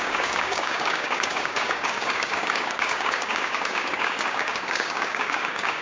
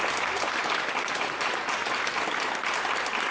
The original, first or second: second